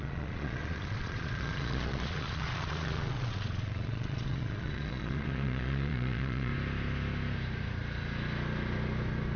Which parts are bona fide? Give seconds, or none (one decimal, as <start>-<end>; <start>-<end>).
6.5-9.4